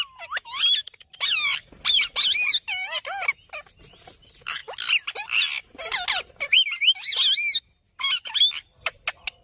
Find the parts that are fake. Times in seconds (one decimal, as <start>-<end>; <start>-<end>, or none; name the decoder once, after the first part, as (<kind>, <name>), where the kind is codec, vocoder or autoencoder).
none

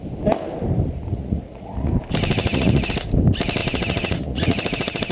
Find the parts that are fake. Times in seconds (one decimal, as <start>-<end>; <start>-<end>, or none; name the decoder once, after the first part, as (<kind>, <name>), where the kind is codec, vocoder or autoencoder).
1.1-1.9 (vocoder, Vocos); 2.4-2.9; 3.6-5.1

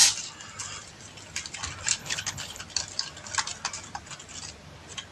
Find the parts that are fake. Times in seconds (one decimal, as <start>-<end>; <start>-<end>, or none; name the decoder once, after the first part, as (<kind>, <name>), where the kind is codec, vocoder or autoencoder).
2.0-2.6 (codec, HILCodec)

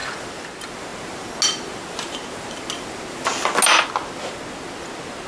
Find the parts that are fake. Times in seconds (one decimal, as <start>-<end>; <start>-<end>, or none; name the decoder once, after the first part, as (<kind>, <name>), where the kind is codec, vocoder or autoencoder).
none

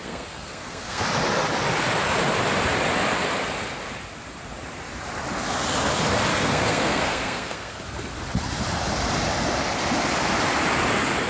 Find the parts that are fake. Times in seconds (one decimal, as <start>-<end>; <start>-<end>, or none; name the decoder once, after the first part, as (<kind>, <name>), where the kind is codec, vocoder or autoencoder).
0.0-1.0 (codec, SNAC); 6.3-7.8